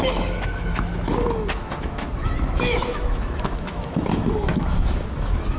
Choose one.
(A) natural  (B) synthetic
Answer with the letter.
B